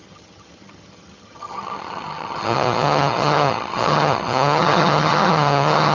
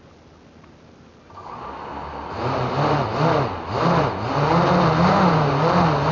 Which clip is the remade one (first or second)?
first